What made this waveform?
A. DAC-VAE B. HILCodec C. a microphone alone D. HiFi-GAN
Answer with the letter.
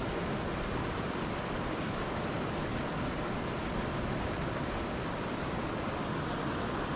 C